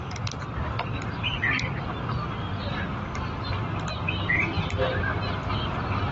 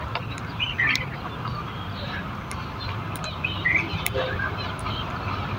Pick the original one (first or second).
first